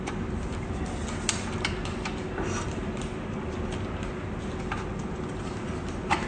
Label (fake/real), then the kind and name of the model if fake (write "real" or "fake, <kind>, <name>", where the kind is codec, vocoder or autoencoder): real